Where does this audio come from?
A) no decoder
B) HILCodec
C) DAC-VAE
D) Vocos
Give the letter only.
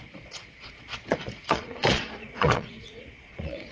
D